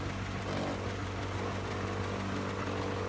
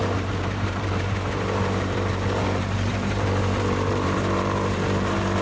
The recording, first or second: first